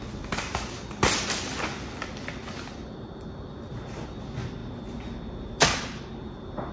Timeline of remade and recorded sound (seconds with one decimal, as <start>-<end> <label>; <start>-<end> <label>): 0.0-6.7 recorded